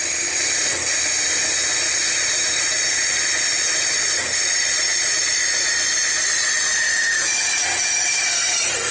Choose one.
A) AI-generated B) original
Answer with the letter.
B